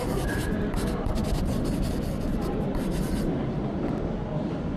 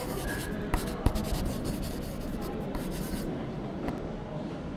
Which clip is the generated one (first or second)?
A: first